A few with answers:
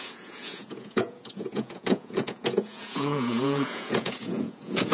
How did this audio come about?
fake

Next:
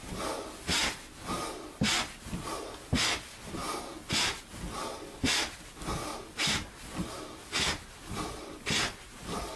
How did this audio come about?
real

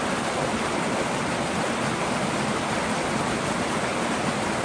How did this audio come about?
real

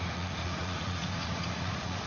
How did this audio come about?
fake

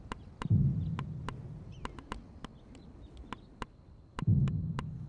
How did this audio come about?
real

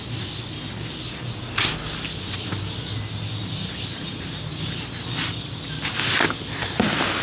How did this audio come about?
real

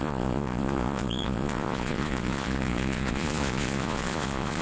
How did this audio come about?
fake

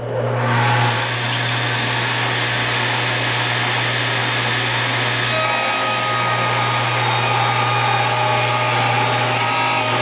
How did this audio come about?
real